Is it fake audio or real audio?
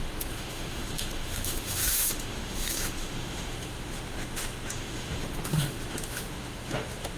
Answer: fake